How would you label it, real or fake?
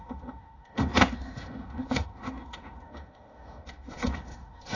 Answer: fake